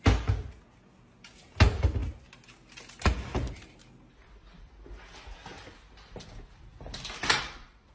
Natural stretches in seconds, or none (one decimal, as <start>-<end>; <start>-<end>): 0.0-7.9